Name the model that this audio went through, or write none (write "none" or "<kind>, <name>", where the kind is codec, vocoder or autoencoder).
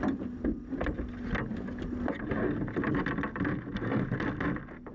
none